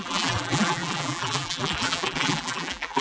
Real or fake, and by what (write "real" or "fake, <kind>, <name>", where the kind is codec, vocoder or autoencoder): fake, vocoder, BigVGAN v2